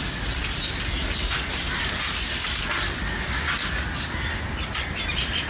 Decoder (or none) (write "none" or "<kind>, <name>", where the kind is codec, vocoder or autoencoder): none